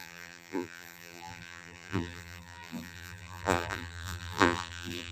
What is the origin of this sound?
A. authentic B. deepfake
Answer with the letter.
B